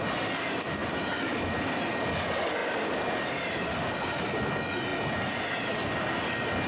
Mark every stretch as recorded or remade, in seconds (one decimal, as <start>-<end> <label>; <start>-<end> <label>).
0.0-0.8 recorded; 0.8-1.8 remade; 1.8-2.6 recorded; 2.6-3.6 remade; 3.6-4.9 recorded; 4.9-5.4 remade; 5.4-6.7 recorded